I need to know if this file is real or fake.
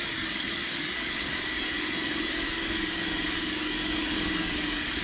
fake